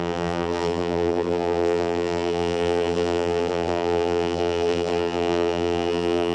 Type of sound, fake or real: fake